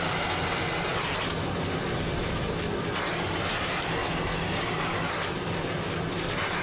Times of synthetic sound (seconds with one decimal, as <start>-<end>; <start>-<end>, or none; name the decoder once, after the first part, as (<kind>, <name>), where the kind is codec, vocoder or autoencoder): none